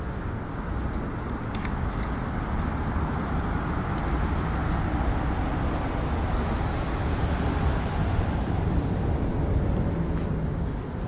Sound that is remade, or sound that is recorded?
recorded